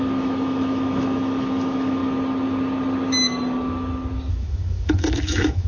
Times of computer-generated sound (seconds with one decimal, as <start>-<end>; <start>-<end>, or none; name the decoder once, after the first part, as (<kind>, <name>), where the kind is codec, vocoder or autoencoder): 0.0-2.0 (autoencoder, DAC-VAE); 4.3-5.7